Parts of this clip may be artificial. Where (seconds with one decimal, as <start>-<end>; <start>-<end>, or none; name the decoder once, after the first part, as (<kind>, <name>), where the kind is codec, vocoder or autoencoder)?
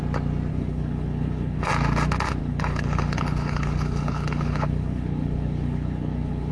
0.5-1.7 (codec, HILCodec); 2.4-6.5